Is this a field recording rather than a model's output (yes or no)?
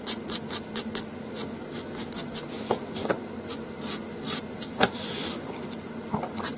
yes